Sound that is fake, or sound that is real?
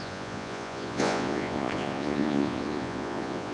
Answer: fake